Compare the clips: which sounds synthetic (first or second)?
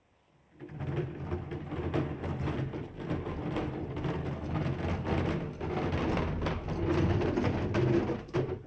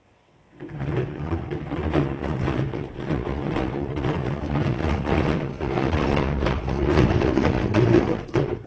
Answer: second